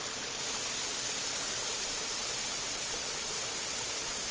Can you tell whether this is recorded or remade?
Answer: recorded